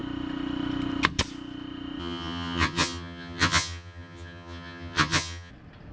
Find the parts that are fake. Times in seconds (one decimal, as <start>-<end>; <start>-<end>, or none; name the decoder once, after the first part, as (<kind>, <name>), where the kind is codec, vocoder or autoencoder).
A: 2.0-5.5 (vocoder, HiFi-GAN)